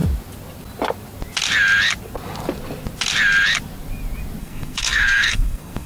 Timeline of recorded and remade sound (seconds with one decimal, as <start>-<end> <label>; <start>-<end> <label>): 0.0-4.4 recorded; 4.4-5.9 remade